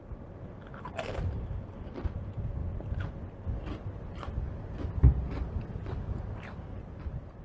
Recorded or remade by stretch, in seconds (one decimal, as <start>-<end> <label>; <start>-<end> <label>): 0.0-7.4 remade

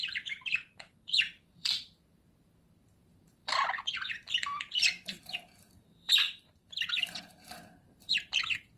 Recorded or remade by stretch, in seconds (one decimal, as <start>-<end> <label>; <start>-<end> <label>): 0.0-8.8 remade

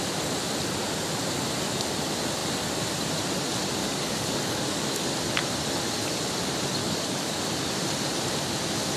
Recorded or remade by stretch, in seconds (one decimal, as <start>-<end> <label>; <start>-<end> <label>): 0.0-3.8 recorded; 3.8-5.1 remade; 5.1-6.8 recorded; 6.8-7.4 remade; 7.4-9.0 recorded

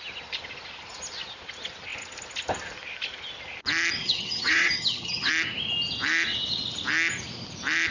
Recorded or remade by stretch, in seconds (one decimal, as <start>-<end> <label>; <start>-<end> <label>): 0.0-4.0 recorded; 4.0-5.3 remade; 5.3-7.9 recorded

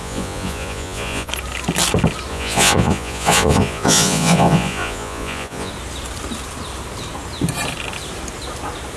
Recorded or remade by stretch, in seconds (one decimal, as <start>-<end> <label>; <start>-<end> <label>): 0.0-1.3 remade; 1.3-2.3 recorded; 2.3-5.7 remade; 5.7-9.0 recorded

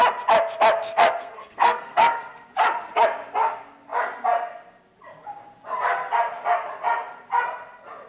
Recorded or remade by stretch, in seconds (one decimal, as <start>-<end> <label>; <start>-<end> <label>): 0.0-0.8 recorded; 0.8-2.2 remade; 2.2-8.1 recorded

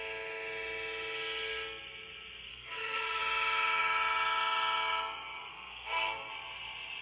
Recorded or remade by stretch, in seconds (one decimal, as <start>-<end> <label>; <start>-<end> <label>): 0.0-2.5 recorded; 2.5-3.2 remade; 3.2-5.5 recorded; 5.5-6.3 remade; 6.3-7.0 recorded